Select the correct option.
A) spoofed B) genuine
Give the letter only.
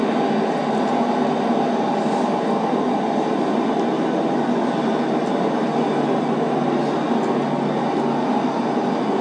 B